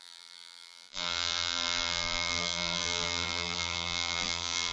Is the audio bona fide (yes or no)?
no